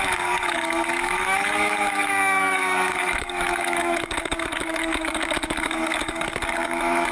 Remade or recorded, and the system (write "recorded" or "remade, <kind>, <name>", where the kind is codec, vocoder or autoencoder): remade, codec, DAC